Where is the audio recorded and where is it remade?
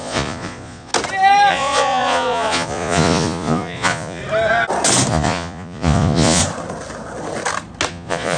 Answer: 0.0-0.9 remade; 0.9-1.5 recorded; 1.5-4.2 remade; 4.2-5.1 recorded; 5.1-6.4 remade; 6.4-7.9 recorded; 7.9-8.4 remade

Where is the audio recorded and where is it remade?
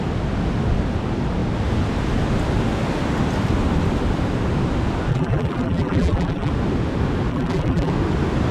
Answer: 0.0-5.1 recorded; 5.1-6.5 remade; 6.5-7.3 recorded; 7.3-7.9 remade; 7.9-8.5 recorded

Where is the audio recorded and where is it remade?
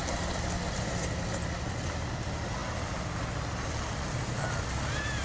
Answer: 0.0-5.2 recorded